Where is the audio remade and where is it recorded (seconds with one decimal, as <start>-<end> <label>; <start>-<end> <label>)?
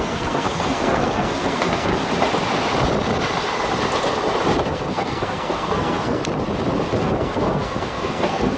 0.0-1.9 remade; 1.9-4.6 recorded; 4.6-6.2 remade; 6.2-7.0 recorded; 7.0-8.6 remade